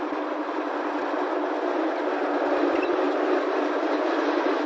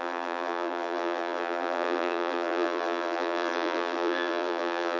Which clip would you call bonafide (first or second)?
first